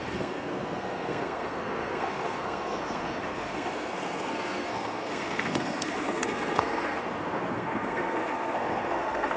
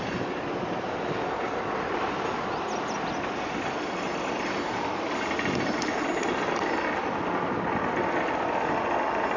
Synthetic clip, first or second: first